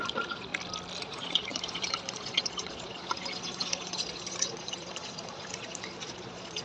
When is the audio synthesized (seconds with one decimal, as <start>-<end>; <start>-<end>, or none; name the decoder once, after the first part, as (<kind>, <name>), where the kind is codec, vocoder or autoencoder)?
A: 0.0-0.5 (vocoder, Vocos); 1.0-6.6